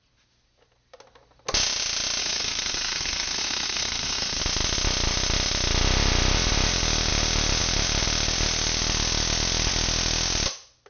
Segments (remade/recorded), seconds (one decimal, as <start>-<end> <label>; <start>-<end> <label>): 0.0-2.2 recorded; 2.2-4.4 remade; 4.4-10.9 recorded